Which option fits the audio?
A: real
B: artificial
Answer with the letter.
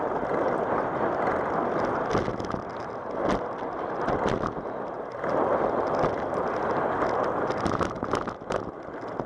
A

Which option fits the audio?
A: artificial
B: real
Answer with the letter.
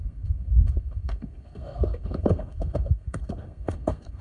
A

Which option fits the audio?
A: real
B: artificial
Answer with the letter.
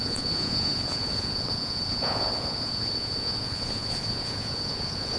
B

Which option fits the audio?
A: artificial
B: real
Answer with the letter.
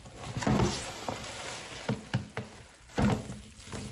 B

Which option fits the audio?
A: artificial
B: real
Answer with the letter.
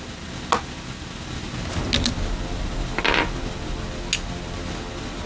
B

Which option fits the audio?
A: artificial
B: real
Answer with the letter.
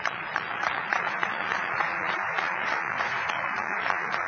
A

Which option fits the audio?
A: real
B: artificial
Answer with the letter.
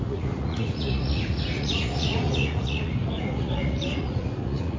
B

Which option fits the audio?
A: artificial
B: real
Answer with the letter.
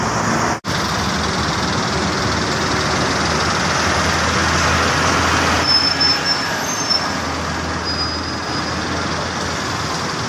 B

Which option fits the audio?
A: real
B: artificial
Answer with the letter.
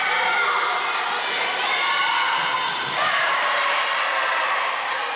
A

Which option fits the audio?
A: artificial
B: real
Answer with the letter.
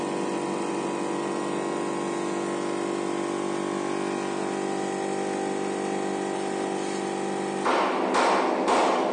B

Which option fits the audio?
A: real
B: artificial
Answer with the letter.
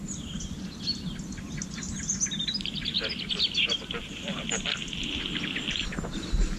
A